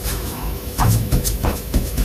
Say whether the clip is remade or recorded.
remade